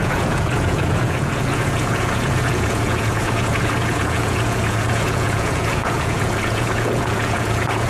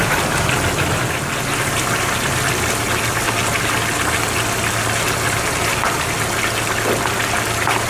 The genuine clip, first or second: second